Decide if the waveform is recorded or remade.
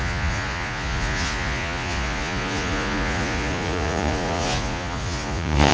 remade